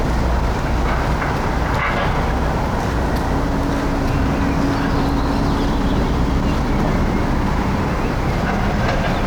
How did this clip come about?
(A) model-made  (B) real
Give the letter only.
B